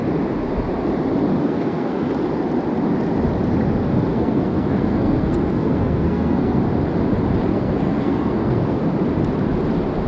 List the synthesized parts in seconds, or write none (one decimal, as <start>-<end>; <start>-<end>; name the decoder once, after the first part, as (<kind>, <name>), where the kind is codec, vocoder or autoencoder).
1.4-2.1 (codec, SNAC); 4.1-6.6; 7.5-8.8

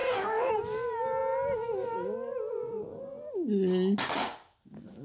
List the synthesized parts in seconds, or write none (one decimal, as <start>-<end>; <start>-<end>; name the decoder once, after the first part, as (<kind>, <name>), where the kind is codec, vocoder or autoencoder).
0.0-0.5 (codec, DAC)

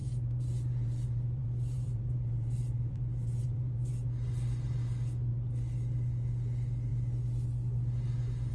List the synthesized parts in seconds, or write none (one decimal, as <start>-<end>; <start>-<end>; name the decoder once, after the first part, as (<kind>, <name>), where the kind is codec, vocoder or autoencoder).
0.0-3.9 (vocoder, BigVGAN v2)

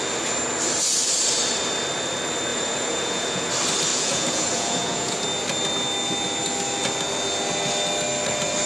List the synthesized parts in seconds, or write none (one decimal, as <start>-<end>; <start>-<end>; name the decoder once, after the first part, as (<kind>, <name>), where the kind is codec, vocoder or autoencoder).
2.5-3.5 (vocoder, Vocos); 3.9-5.2